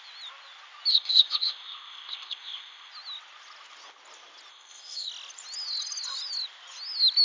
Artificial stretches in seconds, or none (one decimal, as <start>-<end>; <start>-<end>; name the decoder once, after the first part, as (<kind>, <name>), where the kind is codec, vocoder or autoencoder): 0.9-2.9 (codec, ZipCodec); 4.5-5.1